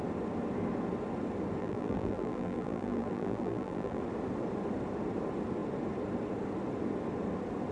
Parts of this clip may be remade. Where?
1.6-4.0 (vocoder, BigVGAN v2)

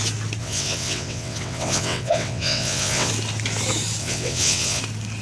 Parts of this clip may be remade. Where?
0.4-3.1 (vocoder, WaveNeXt); 4.0-4.8